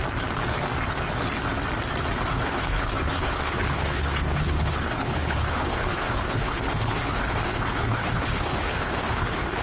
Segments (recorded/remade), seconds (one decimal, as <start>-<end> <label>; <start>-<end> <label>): 0.0-2.3 recorded; 2.3-9.6 remade